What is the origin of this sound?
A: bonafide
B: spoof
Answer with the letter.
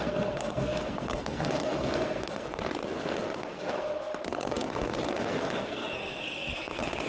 B